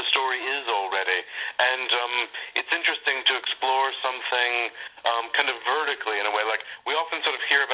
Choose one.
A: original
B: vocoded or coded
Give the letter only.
B